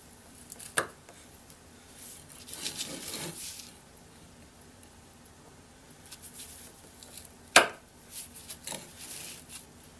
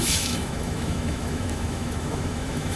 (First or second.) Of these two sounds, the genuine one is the first